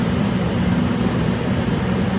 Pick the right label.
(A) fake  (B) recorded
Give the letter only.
A